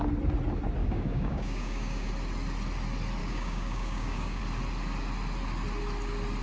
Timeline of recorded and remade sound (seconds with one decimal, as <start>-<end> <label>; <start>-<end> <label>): 0.0-0.8 recorded; 0.8-2.1 remade; 2.1-3.2 recorded; 3.2-4.4 remade; 4.4-6.4 recorded